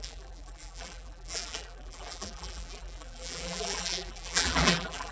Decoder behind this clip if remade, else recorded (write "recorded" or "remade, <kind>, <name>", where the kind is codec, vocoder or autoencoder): remade, vocoder, BigVGAN v2